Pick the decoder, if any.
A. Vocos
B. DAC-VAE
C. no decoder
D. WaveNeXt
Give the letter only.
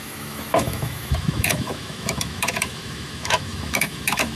B